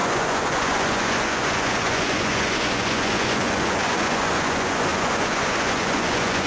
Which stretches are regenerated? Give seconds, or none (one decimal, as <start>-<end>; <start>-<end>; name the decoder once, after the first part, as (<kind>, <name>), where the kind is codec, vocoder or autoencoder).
0.0-6.5 (vocoder, Vocos)